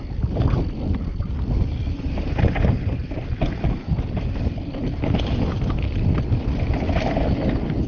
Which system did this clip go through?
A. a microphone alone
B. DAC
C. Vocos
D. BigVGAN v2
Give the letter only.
A